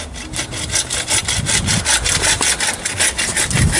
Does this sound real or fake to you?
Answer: real